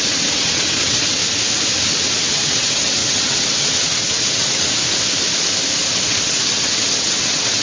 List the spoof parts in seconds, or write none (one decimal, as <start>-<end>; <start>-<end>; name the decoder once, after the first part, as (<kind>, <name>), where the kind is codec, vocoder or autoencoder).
0.0-1.2 (vocoder, WaveNeXt); 1.9-4.8; 6.0-7.6